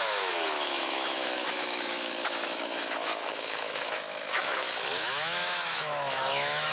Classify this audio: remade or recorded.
remade